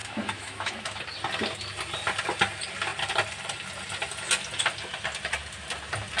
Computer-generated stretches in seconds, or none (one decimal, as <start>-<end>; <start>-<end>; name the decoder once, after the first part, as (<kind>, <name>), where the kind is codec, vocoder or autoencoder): 0.0-1.0 (autoencoder, DAC-VAE)